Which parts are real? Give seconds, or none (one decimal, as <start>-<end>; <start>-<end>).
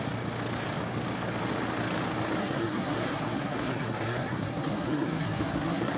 0.0-2.4